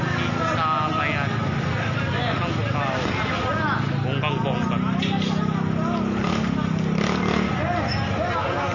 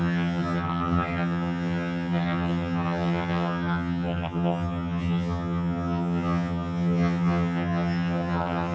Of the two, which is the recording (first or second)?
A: first